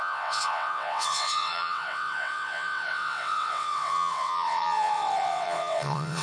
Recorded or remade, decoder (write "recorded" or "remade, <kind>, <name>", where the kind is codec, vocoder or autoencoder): remade, vocoder, WaveNeXt